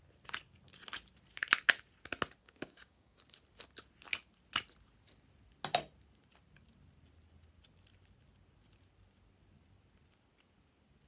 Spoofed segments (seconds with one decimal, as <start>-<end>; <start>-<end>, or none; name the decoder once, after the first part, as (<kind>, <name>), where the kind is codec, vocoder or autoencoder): 2.4-3.2 (codec, DAC)